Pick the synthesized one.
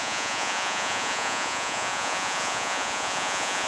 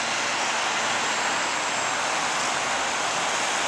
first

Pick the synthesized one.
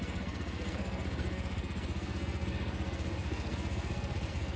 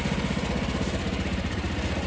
first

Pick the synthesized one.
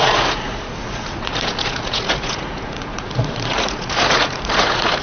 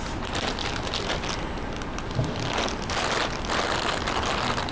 first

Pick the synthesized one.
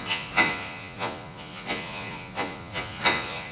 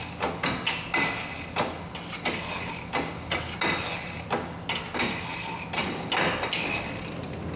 first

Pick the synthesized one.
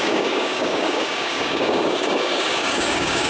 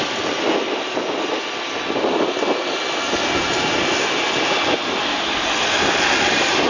first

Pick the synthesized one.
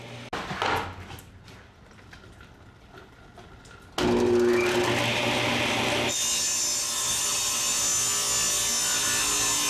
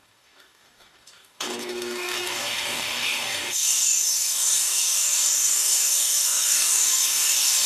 second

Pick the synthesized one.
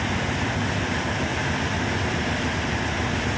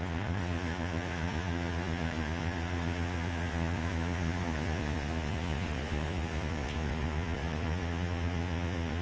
second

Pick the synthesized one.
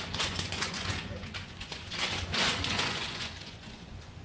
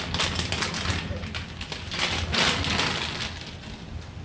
first